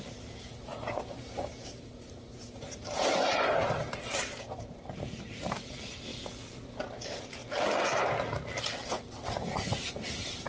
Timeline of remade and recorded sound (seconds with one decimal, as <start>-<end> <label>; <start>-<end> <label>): 0.0-6.1 remade; 6.1-6.8 recorded; 6.8-7.4 remade; 7.4-9.9 recorded; 9.9-10.5 remade